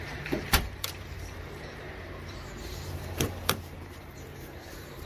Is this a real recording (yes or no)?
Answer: no